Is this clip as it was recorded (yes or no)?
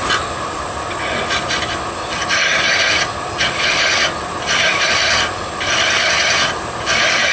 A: yes